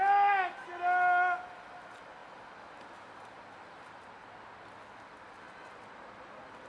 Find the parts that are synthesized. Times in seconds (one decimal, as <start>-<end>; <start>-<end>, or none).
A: none